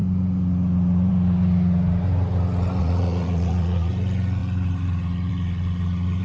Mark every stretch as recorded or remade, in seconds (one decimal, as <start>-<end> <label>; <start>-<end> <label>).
0.0-2.8 recorded; 2.8-3.9 remade; 3.9-6.2 recorded